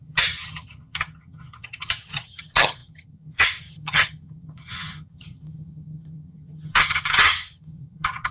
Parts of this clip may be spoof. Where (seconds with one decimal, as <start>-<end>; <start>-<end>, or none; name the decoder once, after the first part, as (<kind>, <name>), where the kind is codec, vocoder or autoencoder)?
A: 0.0-8.3 (vocoder, HiFi-GAN)